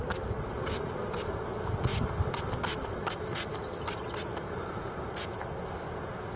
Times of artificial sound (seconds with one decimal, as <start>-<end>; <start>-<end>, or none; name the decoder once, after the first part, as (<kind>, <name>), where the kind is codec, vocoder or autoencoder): none